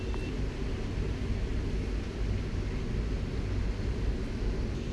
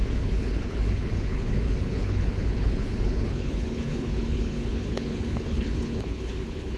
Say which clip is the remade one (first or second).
second